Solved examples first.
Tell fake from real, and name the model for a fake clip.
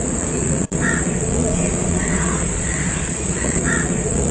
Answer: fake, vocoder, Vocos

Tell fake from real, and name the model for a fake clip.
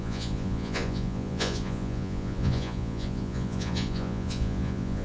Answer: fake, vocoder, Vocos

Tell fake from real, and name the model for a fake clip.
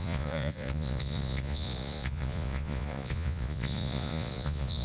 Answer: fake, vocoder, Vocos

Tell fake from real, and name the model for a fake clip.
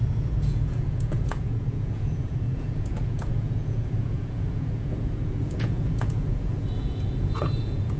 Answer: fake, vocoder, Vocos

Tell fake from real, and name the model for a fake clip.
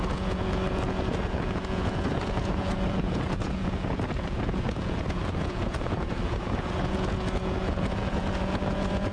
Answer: fake, vocoder, Vocos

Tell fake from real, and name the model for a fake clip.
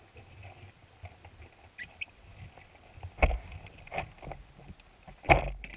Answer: real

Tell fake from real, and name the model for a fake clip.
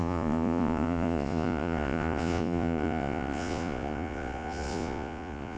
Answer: fake, vocoder, Vocos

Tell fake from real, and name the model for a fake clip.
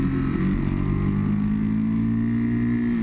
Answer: real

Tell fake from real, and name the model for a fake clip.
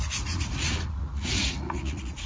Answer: fake, vocoder, Vocos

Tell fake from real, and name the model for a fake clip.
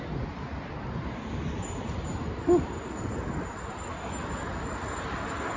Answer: real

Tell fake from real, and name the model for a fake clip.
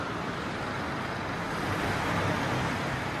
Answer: real